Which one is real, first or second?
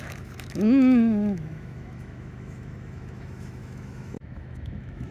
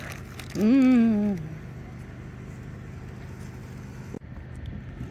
second